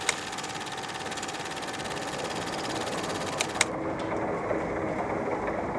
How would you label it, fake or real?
real